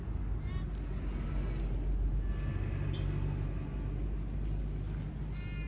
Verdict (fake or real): real